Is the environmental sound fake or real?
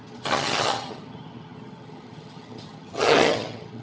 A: fake